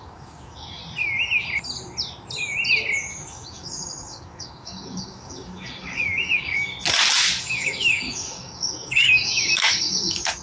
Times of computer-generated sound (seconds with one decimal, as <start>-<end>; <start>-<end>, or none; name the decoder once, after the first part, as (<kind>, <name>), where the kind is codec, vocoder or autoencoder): 0.0-0.8 (codec, DAC); 3.2-6.7; 7.4-10.4